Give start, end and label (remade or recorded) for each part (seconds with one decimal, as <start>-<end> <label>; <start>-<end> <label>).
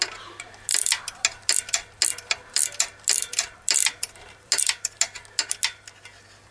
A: 0.0-6.5 recorded